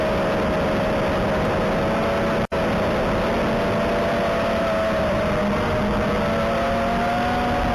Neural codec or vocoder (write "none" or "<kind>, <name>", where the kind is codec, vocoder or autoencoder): none